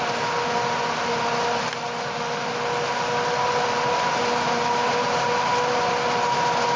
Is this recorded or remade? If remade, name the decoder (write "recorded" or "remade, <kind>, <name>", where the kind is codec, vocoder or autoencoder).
recorded